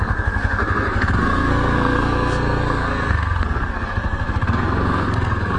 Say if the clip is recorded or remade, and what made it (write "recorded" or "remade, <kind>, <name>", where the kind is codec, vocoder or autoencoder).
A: remade, codec, SNAC